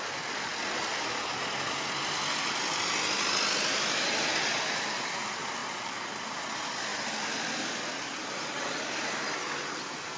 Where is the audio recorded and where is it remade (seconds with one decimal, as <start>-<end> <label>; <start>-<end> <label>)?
0.0-5.6 recorded; 5.6-6.4 remade; 6.4-6.9 recorded; 6.9-8.2 remade; 8.2-10.2 recorded